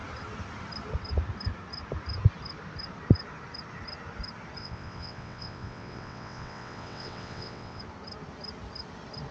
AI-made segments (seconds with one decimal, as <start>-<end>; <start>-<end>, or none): 4.6-7.8